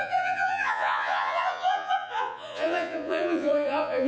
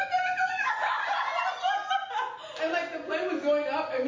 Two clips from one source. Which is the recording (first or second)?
second